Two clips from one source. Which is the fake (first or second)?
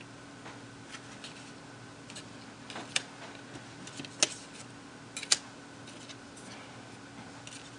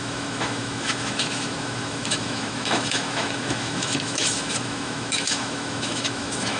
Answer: second